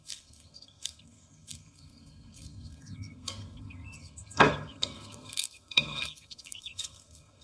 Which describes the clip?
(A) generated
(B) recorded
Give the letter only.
A